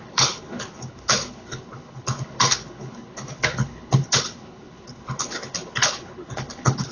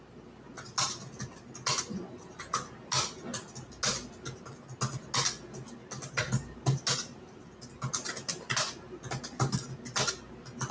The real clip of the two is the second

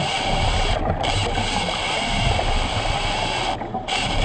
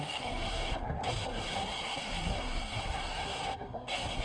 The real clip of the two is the first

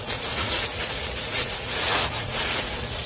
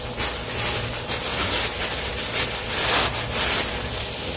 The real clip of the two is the second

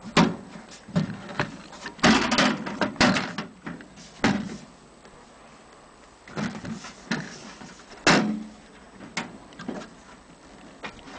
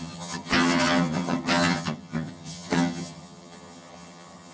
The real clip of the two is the first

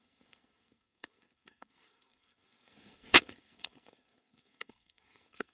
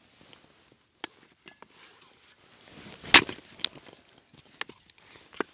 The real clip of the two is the second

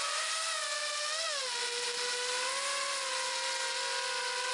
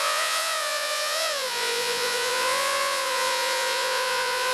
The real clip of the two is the first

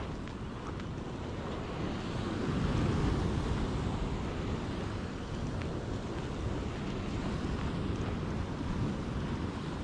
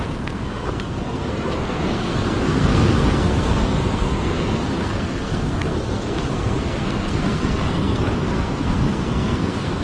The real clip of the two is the first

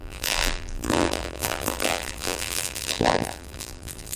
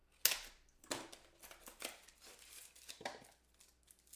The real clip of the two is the second